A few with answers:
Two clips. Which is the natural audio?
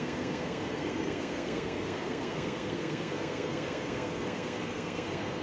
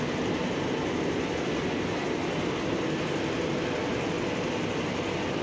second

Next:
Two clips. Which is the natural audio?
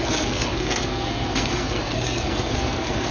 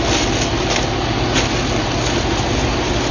second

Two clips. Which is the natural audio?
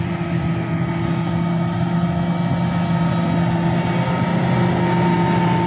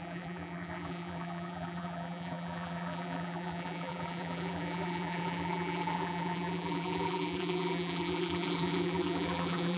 first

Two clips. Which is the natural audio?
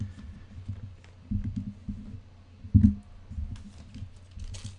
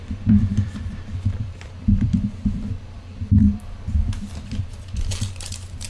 first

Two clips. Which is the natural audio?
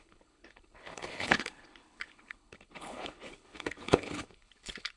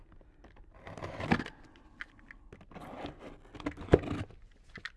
second